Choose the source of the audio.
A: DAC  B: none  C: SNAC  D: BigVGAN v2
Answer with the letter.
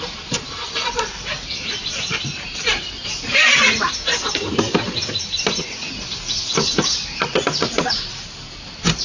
D